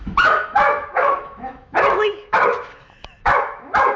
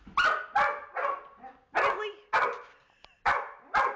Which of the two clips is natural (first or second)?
second